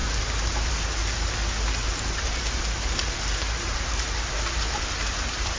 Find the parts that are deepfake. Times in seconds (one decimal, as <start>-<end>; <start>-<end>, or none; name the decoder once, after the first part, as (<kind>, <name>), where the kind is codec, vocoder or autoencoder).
0.0-0.7 (vocoder, BigVGAN v2); 1.8-5.6